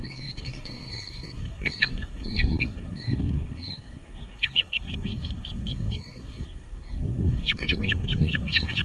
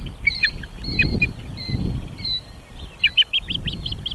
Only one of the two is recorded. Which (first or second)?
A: second